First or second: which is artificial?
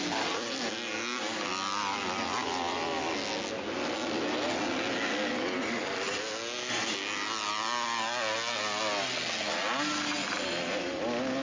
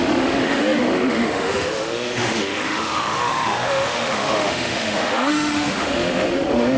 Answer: second